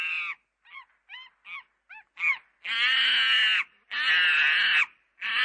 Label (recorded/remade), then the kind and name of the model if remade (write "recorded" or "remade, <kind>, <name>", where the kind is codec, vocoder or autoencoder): recorded